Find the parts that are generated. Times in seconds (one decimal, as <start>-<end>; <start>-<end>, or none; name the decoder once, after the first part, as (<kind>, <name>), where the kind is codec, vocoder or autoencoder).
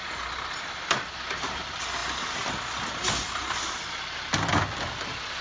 none